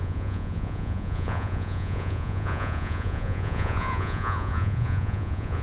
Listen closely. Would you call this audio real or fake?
fake